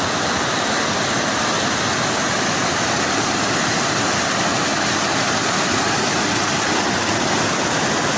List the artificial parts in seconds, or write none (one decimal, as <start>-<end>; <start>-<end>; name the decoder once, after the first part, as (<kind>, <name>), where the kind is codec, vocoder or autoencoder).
4.7-5.2 (vocoder, BigVGAN v2)

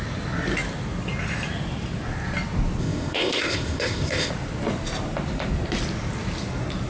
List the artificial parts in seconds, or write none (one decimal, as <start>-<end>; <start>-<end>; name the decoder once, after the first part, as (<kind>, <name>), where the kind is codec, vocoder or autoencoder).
2.8-4.3 (codec, ZipCodec)

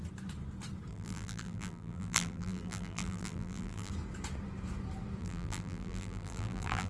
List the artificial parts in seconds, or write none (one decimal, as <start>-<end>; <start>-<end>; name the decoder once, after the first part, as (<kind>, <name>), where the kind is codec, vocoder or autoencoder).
0.9-3.9 (vocoder, BigVGAN v2); 5.2-6.9

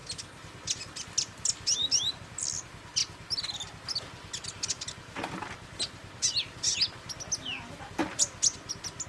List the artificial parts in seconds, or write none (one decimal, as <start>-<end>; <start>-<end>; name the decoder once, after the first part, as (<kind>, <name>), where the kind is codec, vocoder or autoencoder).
none